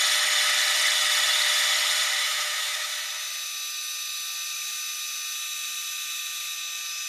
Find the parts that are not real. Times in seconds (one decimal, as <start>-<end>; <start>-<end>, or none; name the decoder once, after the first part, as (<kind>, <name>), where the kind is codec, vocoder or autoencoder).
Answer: 2.2-2.9 (autoencoder, DAC-VAE)